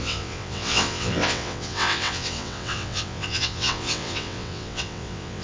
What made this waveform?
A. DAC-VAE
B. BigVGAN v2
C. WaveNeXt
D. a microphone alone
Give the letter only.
C